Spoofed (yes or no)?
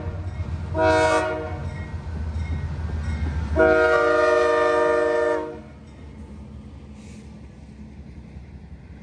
no